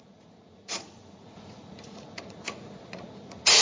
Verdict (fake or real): fake